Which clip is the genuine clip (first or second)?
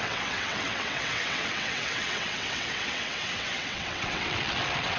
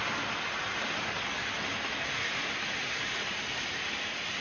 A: second